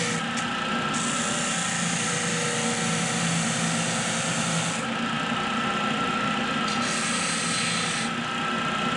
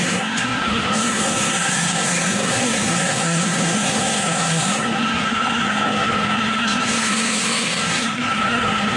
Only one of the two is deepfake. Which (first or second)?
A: second